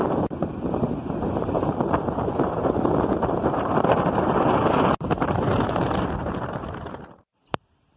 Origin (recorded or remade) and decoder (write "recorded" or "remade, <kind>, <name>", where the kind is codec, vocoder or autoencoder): remade, vocoder, BigVGAN v2